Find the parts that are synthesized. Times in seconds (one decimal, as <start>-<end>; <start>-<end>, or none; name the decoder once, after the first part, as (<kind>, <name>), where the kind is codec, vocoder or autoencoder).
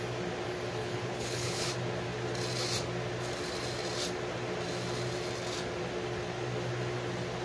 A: 0.8-1.7 (codec, HILCodec)